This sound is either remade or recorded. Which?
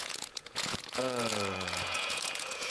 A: remade